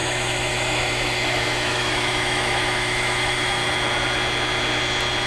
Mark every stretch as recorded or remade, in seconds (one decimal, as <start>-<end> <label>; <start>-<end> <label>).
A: 0.0-3.6 remade; 3.6-5.3 recorded